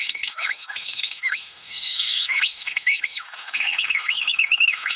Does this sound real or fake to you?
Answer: fake